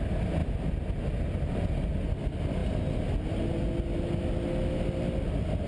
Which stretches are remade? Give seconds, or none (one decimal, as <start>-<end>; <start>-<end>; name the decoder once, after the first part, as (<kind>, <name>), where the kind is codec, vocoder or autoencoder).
none